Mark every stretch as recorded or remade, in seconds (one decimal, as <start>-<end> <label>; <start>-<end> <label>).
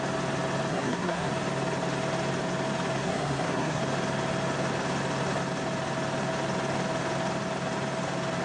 0.0-0.7 recorded; 0.7-1.3 remade; 1.3-3.0 recorded; 3.0-3.8 remade; 3.8-8.4 recorded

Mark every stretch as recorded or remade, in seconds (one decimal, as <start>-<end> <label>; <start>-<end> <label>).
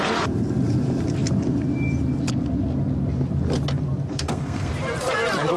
0.0-4.1 recorded; 4.1-4.7 remade; 4.7-5.6 recorded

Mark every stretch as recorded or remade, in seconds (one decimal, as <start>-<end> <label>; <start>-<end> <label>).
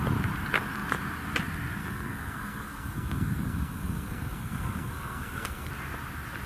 0.0-1.8 recorded; 1.8-5.7 remade; 5.7-6.5 recorded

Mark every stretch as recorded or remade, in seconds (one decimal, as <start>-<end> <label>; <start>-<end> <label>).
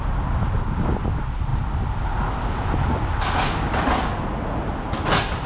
0.0-5.5 recorded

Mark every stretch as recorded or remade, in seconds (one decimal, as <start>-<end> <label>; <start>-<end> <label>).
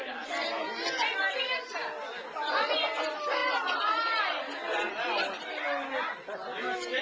0.0-7.0 recorded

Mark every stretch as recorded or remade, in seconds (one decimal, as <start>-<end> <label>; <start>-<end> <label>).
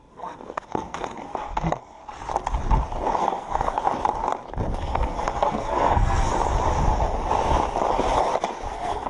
0.0-2.0 remade; 2.0-3.2 recorded; 3.2-3.8 remade; 3.8-4.8 recorded; 4.8-6.3 remade; 6.3-8.7 recorded; 8.7-9.1 remade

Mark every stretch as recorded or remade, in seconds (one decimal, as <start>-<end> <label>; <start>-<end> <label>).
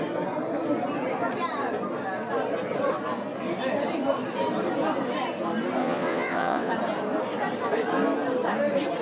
0.0-5.8 recorded; 5.8-6.7 remade; 6.7-9.0 recorded